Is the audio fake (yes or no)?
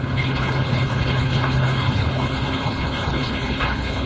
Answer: yes